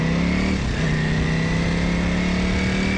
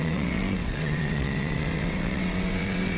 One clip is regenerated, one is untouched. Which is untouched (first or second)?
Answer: first